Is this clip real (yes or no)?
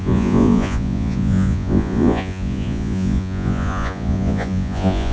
no